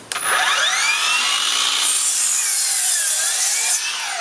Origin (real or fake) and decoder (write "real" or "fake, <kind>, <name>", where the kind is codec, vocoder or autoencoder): real